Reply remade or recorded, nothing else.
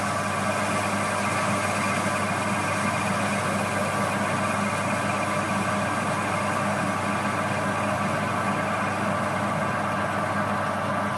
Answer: recorded